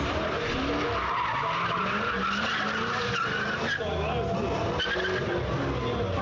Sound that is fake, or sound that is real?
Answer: real